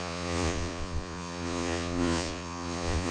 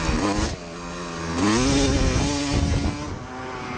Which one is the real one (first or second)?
second